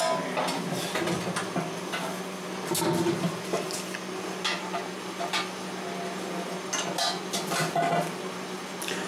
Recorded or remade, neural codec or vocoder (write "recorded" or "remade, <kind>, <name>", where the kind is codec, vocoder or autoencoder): recorded